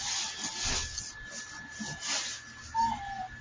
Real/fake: real